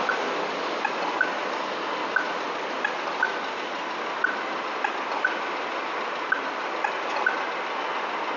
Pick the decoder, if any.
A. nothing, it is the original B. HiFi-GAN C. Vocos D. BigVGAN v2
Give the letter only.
A